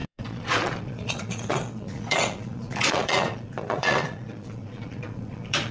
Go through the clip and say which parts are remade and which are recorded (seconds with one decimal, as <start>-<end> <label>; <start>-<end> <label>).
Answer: 0.0-5.7 remade